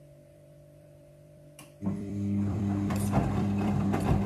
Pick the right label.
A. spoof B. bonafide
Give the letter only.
A